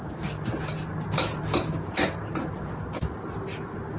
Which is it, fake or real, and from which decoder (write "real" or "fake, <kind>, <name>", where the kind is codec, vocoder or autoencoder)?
real